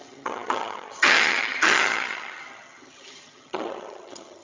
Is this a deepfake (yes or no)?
yes